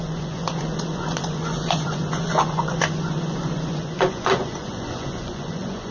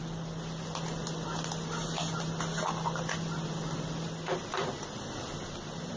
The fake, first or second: first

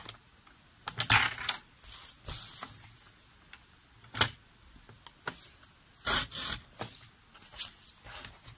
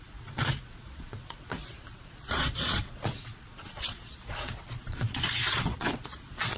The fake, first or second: second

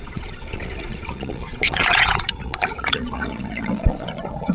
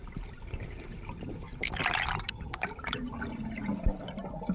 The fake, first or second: first